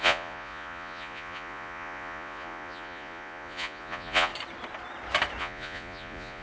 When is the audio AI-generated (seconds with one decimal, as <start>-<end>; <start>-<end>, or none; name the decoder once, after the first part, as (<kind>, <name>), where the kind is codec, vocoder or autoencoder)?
0.0-4.3 (vocoder, Vocos); 5.4-6.4